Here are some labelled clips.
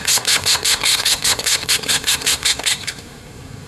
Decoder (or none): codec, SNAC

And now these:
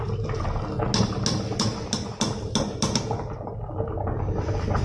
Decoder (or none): none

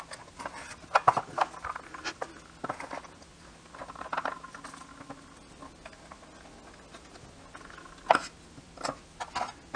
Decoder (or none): none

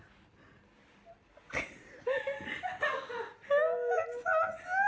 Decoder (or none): none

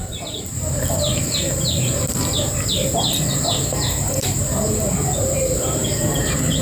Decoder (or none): vocoder, BigVGAN v2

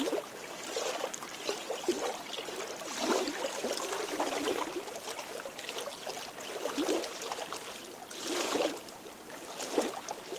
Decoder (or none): none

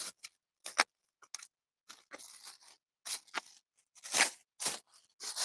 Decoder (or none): none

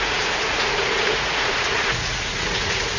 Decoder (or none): vocoder, Vocos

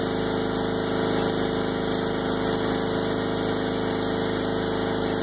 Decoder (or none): none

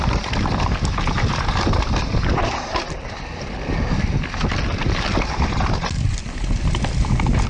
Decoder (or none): none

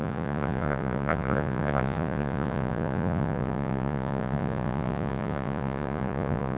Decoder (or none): vocoder, Vocos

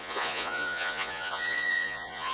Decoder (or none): vocoder, Vocos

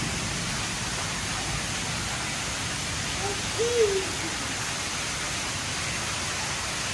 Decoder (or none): none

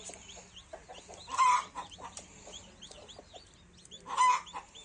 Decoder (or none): none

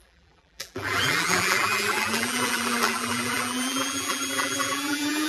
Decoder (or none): vocoder, BigVGAN v2